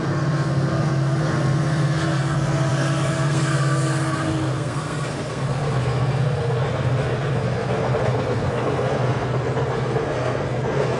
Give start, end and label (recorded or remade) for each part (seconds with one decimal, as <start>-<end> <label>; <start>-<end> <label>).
0.0-11.0 remade